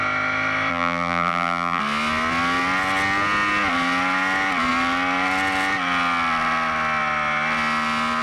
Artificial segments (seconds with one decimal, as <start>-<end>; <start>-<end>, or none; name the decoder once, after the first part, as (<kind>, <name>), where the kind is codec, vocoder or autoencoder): 0.7-1.8 (vocoder, BigVGAN v2)